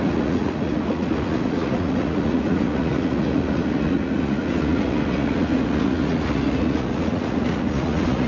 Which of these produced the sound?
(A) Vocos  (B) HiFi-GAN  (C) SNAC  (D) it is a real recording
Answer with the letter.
A